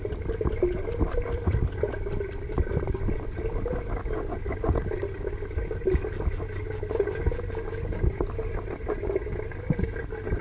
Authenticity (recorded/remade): recorded